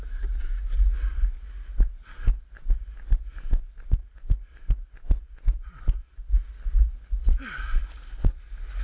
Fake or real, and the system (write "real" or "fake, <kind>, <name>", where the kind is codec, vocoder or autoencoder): real